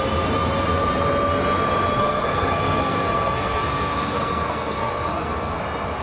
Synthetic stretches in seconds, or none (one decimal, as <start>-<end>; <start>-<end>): 2.0-5.6